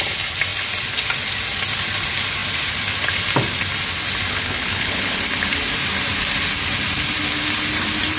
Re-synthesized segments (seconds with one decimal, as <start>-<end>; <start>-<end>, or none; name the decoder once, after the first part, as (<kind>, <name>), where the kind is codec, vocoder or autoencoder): 4.3-5.2 (codec, HILCodec)